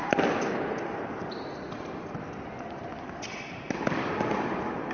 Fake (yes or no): no